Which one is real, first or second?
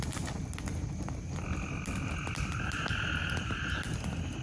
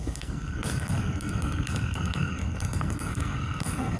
first